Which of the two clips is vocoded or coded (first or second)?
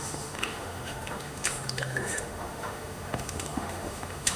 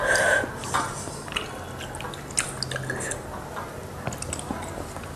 first